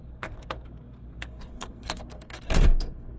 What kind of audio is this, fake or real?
fake